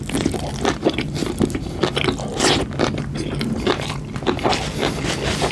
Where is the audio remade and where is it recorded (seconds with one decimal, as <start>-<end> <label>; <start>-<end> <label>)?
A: 0.0-5.5 recorded